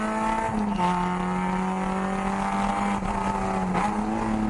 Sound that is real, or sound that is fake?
real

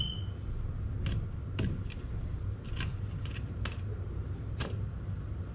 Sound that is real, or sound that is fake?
real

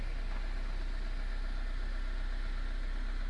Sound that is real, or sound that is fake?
real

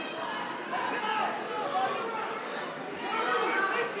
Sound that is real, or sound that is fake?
real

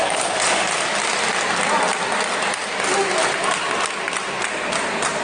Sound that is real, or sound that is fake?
real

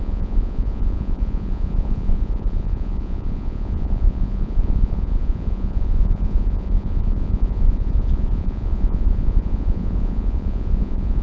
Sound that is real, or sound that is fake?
fake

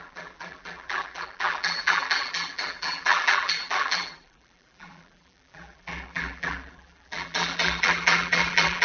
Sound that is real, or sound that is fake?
fake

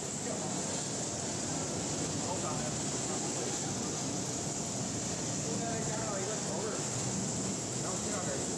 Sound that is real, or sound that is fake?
real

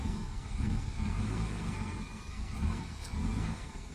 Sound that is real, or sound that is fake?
fake